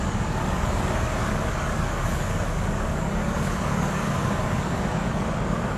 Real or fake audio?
fake